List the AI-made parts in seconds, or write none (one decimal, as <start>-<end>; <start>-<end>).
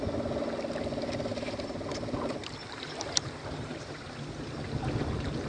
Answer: 1.3-3.8